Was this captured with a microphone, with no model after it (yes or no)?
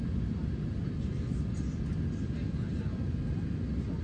yes